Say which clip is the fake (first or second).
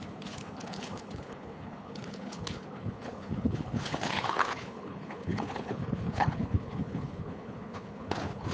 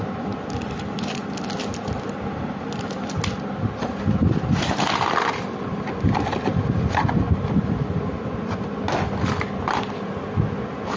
first